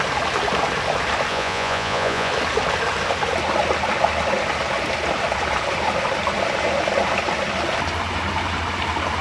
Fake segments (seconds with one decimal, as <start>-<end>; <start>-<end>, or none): 1.3-2.3